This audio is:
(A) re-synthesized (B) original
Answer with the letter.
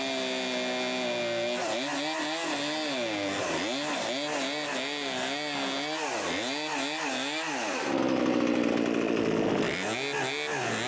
B